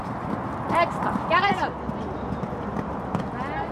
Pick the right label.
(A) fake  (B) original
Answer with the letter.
B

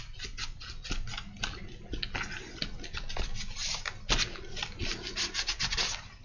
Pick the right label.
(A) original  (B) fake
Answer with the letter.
A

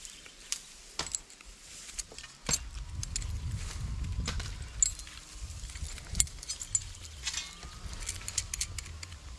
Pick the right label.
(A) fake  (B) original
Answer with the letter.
B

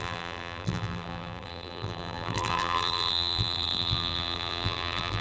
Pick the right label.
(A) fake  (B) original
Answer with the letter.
A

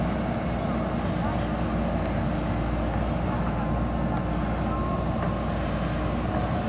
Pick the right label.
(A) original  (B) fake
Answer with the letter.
A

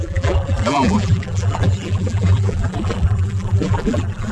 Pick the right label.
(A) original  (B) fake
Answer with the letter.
B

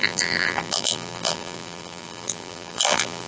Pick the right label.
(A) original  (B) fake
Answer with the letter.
B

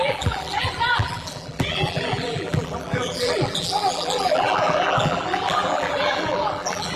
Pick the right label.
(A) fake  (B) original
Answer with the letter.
A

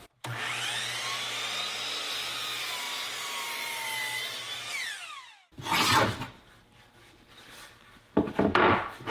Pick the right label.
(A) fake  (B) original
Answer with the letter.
B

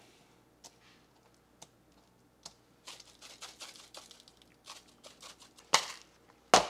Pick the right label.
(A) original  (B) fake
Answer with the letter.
A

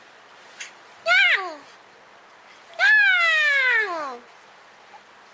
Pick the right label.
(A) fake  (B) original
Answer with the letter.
B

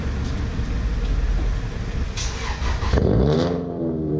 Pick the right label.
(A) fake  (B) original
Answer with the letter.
A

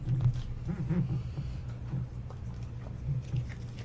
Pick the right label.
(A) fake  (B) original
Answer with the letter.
B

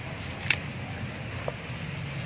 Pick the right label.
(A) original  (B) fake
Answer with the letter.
A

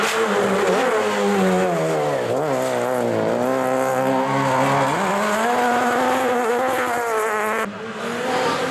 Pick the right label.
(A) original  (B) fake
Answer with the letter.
A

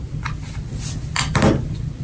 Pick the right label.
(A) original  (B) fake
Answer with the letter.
B